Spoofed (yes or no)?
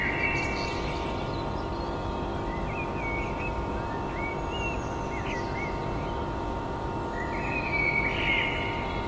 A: no